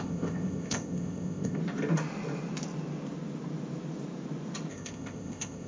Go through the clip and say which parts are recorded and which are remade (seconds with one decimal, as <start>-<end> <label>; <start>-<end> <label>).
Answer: 0.0-1.6 remade; 1.6-4.7 recorded; 4.7-5.7 remade